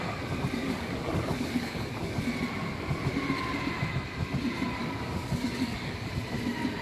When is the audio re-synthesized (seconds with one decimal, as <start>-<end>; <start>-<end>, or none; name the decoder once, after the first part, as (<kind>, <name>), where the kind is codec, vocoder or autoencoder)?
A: 0.6-2.2 (codec, DAC); 4.8-6.1